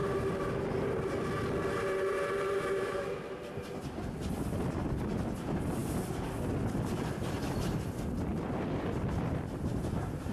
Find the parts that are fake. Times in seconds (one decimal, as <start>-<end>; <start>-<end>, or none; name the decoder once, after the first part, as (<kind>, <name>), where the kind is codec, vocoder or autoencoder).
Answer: 8.3-9.5 (vocoder, BigVGAN v2)